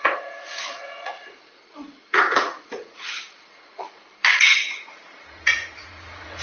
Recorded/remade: remade